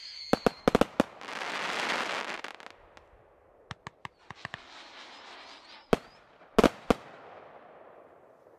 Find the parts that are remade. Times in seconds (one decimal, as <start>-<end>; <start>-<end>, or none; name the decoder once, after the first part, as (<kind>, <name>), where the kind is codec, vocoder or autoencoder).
none